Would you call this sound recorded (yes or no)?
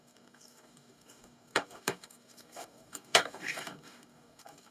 no